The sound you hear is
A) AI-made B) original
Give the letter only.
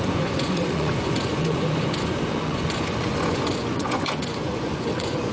A